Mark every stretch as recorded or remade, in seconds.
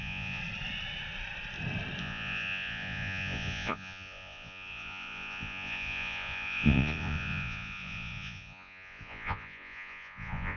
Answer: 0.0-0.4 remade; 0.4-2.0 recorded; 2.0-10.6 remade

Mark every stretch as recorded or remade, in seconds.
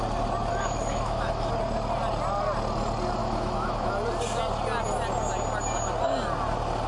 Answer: 0.0-0.5 recorded; 0.5-1.5 remade; 1.5-3.2 recorded; 3.2-3.9 remade; 3.9-6.9 recorded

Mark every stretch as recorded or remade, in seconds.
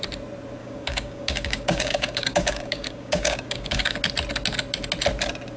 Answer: 0.0-0.6 recorded; 0.6-4.0 remade; 4.0-5.6 recorded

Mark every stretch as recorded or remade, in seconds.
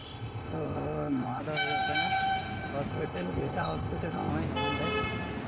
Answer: 0.0-1.4 remade; 1.4-2.9 recorded; 2.9-4.3 remade; 4.3-5.5 recorded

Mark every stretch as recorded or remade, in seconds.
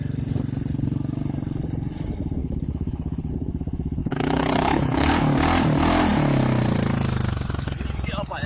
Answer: 0.0-2.4 recorded; 2.4-3.3 remade; 3.3-4.0 recorded; 4.0-5.1 remade; 5.1-8.5 recorded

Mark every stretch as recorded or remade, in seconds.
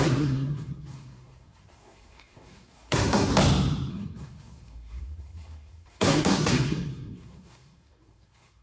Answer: 0.0-3.3 remade; 3.3-3.9 recorded; 3.9-8.6 remade